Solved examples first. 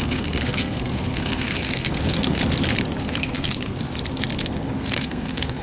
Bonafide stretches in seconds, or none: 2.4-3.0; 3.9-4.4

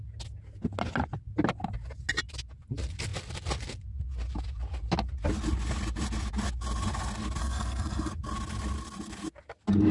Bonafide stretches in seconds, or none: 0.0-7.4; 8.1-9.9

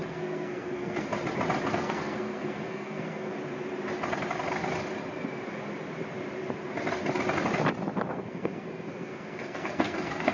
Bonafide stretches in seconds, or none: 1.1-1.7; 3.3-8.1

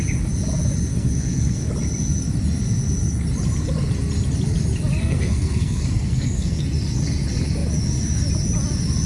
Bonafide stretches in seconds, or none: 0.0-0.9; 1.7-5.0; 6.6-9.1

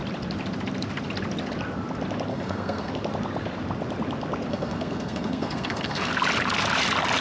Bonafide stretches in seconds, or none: 0.0-2.3; 2.9-4.5; 6.1-7.2